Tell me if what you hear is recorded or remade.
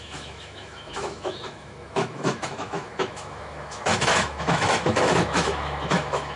remade